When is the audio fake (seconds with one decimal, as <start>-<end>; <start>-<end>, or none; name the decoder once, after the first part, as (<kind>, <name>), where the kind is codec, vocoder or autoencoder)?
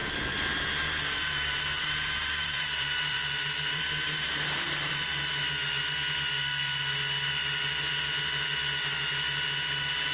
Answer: 0.0-4.9 (vocoder, BigVGAN v2)